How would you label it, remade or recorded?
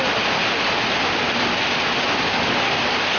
recorded